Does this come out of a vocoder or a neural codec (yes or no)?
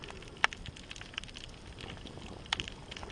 no